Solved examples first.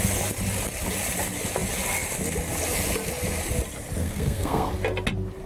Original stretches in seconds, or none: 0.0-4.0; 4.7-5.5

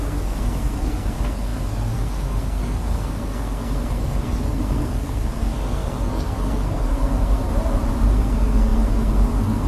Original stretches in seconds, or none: 7.5-8.1

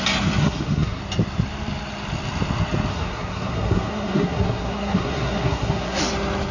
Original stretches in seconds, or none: 0.0-0.4; 1.0-2.9; 6.0-6.5

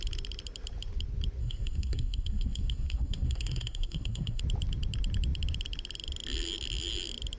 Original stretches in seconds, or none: 0.0-1.4; 4.4-7.4